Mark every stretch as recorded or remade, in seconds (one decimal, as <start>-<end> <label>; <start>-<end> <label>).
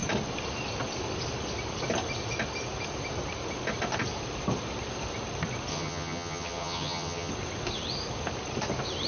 0.0-5.7 recorded; 5.7-7.3 remade; 7.3-9.1 recorded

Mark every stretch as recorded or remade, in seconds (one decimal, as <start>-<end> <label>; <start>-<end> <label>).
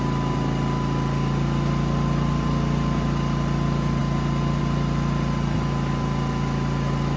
0.0-7.2 recorded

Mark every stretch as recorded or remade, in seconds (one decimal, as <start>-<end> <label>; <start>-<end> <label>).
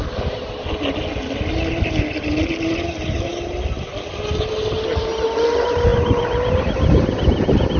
0.0-7.8 recorded